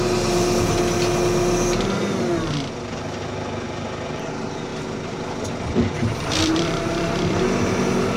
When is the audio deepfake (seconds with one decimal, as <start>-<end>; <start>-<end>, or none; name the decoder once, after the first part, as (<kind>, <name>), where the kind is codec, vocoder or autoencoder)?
4.7-7.4 (vocoder, BigVGAN v2)